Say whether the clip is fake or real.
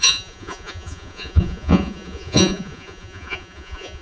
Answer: fake